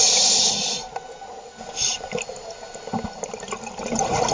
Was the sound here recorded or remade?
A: recorded